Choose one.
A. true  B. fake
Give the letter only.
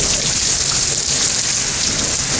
A